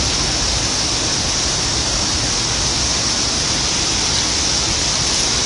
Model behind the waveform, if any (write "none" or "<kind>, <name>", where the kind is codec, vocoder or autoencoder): none